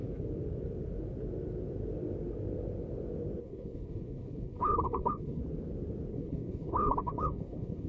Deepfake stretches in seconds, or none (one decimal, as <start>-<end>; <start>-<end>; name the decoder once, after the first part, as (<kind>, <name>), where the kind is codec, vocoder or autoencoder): 3.4-5.4 (codec, HILCodec); 6.1-7.9

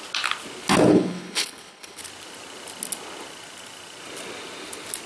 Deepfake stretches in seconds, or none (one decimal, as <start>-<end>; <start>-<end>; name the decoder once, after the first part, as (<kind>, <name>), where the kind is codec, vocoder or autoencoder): 0.9-2.0 (codec, HILCodec)

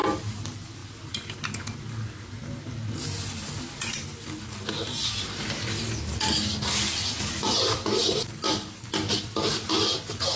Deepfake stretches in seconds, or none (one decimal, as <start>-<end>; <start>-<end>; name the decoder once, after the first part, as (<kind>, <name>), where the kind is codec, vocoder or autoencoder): none

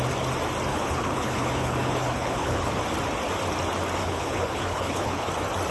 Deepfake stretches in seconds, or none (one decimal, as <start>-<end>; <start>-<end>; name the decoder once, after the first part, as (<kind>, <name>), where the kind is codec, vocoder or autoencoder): 0.7-2.7 (codec, HILCodec); 4.0-5.3

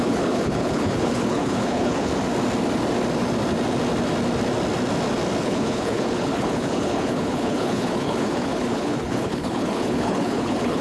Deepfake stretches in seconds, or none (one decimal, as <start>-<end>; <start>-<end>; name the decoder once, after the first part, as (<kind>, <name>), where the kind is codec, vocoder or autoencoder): 0.0-2.1 (codec, HILCodec); 5.4-10.8

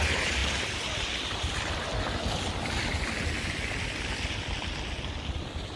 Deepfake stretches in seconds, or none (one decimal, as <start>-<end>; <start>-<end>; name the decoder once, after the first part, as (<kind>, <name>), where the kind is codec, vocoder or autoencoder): none

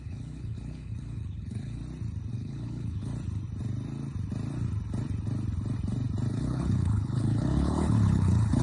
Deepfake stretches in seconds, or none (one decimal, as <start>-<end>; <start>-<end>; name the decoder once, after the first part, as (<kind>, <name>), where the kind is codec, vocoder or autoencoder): 0.0-1.8 (codec, HILCodec); 2.3-3.1; 6.3-8.6